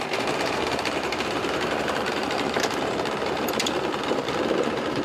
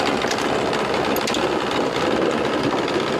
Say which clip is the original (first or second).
second